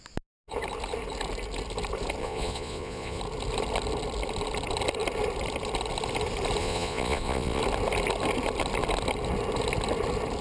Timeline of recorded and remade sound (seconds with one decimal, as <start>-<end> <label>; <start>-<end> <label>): 0.0-2.2 recorded; 2.2-3.2 remade; 3.2-6.6 recorded; 6.6-7.6 remade; 7.6-10.4 recorded